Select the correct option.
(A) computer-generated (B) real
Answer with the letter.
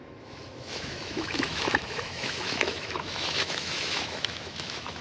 A